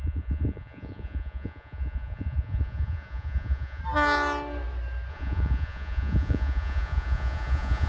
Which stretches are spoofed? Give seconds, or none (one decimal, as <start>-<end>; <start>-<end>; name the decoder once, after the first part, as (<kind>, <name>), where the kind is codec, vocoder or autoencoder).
0.0-3.8 (vocoder, Vocos); 5.1-7.9